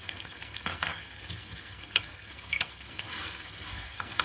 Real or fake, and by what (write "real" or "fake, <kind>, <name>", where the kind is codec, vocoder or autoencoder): fake, codec, SNAC